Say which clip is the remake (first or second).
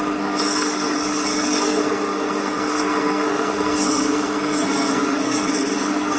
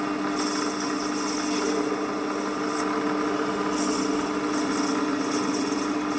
first